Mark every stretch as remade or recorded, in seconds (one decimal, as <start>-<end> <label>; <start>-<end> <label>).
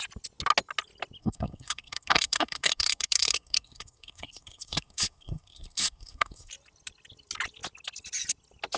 0.0-1.2 recorded; 1.2-6.5 remade; 6.5-8.8 recorded